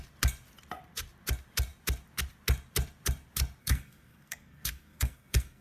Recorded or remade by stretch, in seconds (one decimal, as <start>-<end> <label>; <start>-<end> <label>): 0.0-3.6 recorded; 3.6-5.6 remade

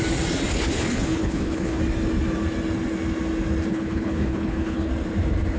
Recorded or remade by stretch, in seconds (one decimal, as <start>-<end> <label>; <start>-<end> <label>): 0.0-0.5 recorded; 0.5-1.8 remade; 1.8-3.7 recorded; 3.7-4.9 remade; 4.9-5.6 recorded

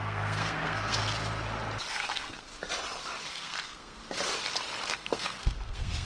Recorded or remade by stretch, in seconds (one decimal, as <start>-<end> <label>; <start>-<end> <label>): 0.0-1.0 remade; 1.0-1.9 recorded; 1.9-2.5 remade; 2.5-3.3 recorded; 3.3-4.0 remade; 4.0-4.9 recorded; 4.9-6.1 remade

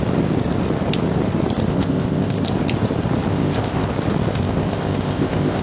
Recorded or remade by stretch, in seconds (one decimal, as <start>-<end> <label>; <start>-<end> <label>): 0.0-1.7 recorded; 1.7-2.5 remade; 2.5-3.3 recorded; 3.3-3.9 remade; 3.9-4.3 recorded; 4.3-5.6 remade

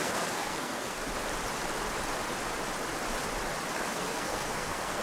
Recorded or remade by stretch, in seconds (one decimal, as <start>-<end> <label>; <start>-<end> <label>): 0.0-1.0 remade; 1.0-3.7 recorded; 3.7-5.0 remade

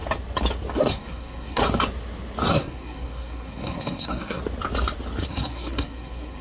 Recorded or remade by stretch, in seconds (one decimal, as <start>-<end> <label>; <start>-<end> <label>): 0.0-0.9 recorded; 0.9-1.6 remade; 1.6-2.5 recorded; 2.5-4.4 remade; 4.4-5.3 recorded; 5.3-6.4 remade

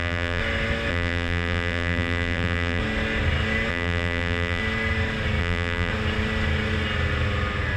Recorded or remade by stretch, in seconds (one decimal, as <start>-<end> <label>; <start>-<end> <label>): 0.0-0.4 remade; 0.4-0.9 recorded; 0.9-2.8 remade; 2.8-3.7 recorded; 3.7-4.6 remade; 4.6-5.4 recorded; 5.4-5.9 remade; 5.9-7.8 recorded